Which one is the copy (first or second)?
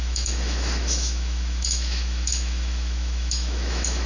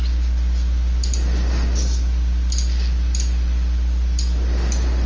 first